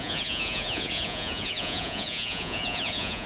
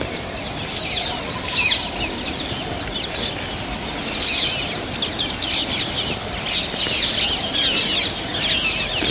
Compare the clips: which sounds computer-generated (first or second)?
first